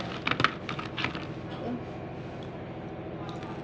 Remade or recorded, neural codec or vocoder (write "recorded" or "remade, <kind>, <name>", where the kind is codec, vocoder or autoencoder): recorded